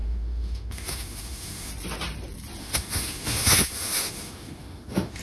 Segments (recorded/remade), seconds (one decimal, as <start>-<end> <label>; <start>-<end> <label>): 0.0-1.7 remade; 1.7-2.6 recorded; 2.6-5.2 remade